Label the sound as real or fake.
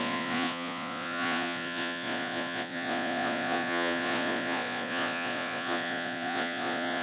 fake